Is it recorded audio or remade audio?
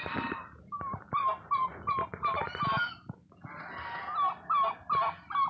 recorded